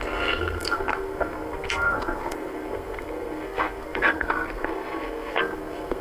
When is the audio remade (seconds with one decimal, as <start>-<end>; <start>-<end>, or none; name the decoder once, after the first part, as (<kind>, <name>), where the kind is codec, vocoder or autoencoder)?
0.0-6.0 (codec, SNAC)